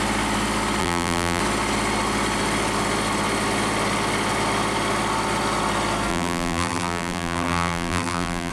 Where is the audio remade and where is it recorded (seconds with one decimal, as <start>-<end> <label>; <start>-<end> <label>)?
0.0-0.8 recorded; 0.8-1.4 remade; 1.4-6.1 recorded; 6.1-8.5 remade